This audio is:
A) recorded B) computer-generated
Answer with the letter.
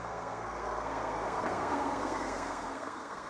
B